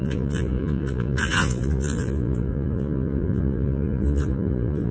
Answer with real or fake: fake